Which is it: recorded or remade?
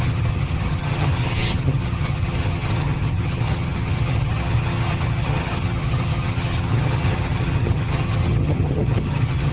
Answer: remade